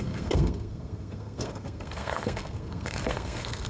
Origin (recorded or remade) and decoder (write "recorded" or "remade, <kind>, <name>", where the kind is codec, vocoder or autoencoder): remade, codec, SNAC